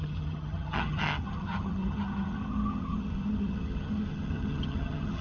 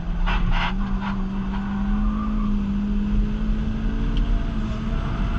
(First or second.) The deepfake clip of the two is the first